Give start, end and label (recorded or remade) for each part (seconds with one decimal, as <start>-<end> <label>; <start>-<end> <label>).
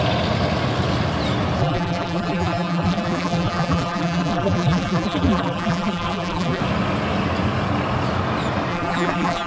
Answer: 0.0-1.6 recorded; 1.6-6.6 remade; 6.6-8.7 recorded; 8.7-9.5 remade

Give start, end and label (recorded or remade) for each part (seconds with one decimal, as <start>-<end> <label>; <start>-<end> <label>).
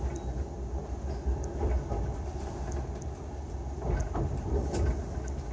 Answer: 0.0-4.0 recorded; 4.0-4.5 remade; 4.5-5.5 recorded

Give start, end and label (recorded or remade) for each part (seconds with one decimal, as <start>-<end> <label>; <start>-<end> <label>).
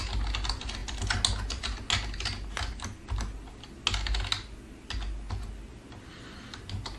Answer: 0.0-7.0 recorded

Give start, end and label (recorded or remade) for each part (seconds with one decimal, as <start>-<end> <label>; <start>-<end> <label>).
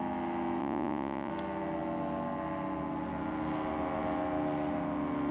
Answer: 0.0-0.6 recorded; 0.6-1.3 remade; 1.3-5.3 recorded